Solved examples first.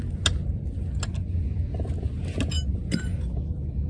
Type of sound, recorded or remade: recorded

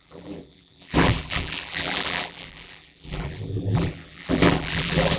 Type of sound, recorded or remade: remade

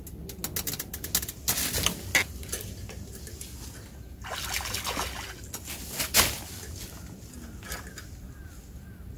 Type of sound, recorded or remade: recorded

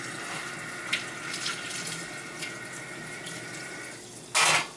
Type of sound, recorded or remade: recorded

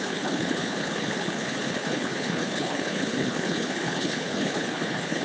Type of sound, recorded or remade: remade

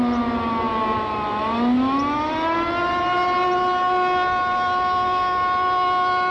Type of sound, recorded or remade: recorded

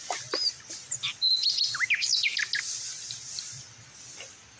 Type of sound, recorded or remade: recorded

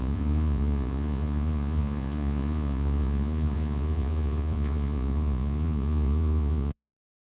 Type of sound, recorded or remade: remade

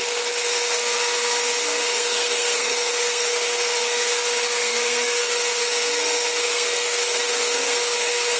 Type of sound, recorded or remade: remade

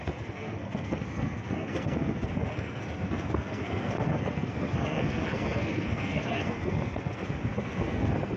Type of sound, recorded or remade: remade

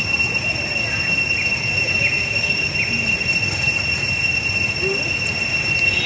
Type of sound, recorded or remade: remade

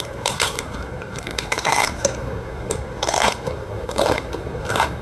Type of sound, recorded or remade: remade